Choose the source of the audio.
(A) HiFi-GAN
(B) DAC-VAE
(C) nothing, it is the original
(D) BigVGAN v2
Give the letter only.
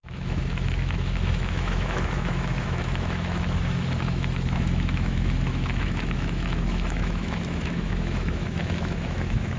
B